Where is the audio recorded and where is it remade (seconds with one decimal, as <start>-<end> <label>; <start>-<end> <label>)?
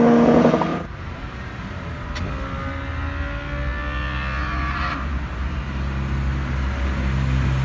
0.0-0.7 recorded; 0.7-2.2 remade; 2.2-4.4 recorded; 4.4-5.6 remade; 5.6-7.6 recorded